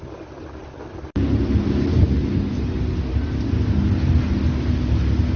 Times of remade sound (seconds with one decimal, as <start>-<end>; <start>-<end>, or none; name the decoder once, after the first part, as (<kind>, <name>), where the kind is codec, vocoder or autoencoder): none